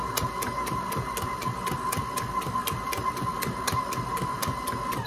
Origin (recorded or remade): recorded